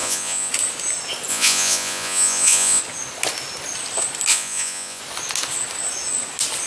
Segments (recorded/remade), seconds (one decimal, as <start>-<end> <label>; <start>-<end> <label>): 0.0-0.5 remade; 0.5-1.3 recorded; 1.3-2.8 remade; 2.8-4.3 recorded; 4.3-5.0 remade; 5.0-6.7 recorded